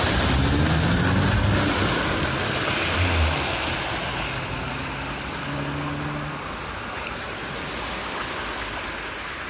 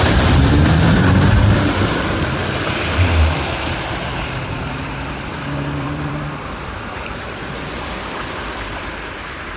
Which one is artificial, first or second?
second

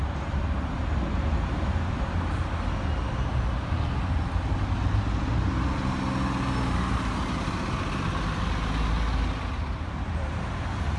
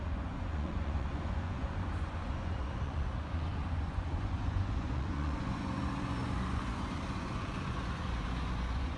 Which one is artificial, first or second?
second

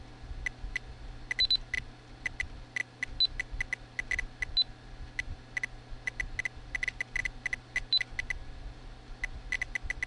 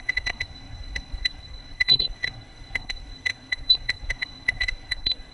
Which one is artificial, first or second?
second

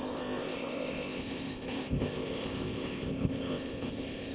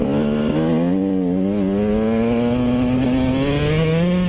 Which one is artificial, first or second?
first